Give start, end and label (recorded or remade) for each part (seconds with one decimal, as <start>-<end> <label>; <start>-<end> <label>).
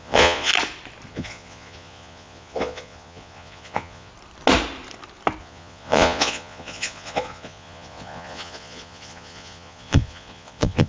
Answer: 0.0-0.5 remade; 0.5-1.1 recorded; 1.1-4.1 remade; 4.1-5.4 recorded; 5.4-10.9 remade